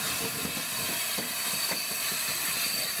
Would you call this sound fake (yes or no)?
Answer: no